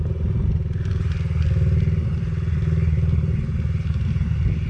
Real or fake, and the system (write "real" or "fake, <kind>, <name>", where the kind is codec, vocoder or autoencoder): real